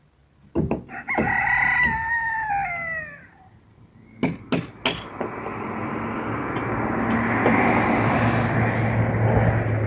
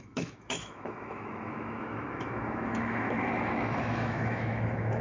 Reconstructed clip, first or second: second